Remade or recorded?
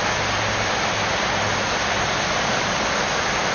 recorded